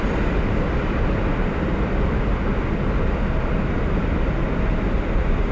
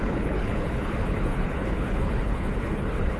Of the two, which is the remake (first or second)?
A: second